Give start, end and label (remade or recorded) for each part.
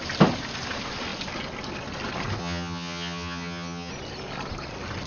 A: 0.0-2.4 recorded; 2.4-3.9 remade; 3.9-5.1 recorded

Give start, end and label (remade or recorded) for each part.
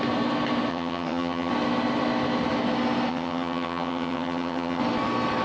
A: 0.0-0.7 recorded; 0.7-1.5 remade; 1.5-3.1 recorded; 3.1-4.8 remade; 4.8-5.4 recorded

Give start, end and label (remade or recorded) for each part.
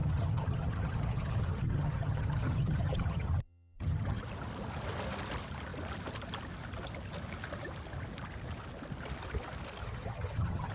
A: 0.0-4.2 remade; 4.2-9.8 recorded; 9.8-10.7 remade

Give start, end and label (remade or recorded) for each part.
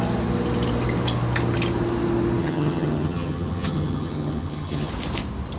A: 0.0-2.4 recorded; 2.4-4.9 remade; 4.9-5.6 recorded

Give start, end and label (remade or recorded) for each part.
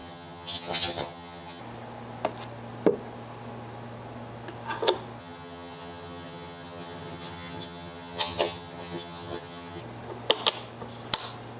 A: 0.0-1.6 remade; 1.6-5.2 recorded; 5.2-9.8 remade; 9.8-11.6 recorded